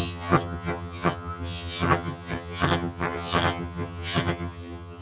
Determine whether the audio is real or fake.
fake